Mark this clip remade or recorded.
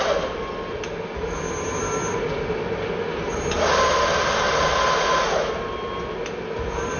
recorded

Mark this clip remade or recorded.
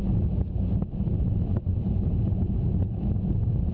recorded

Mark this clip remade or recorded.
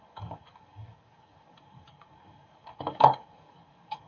remade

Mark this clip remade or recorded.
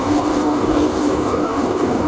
remade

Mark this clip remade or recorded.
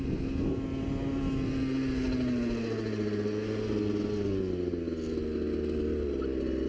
recorded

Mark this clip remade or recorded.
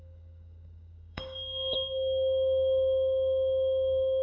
remade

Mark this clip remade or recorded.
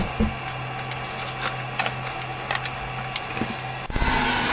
recorded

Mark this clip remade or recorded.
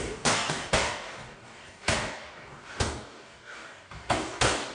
remade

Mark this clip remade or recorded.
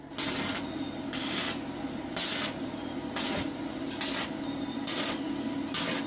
recorded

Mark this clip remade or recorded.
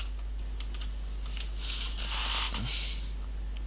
recorded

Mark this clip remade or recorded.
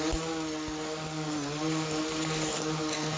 recorded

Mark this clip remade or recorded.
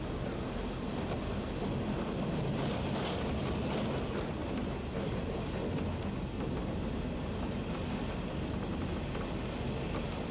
recorded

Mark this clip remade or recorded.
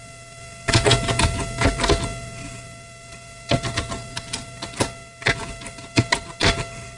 recorded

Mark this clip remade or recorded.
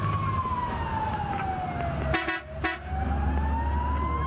recorded